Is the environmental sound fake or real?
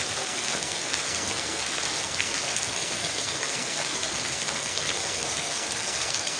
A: fake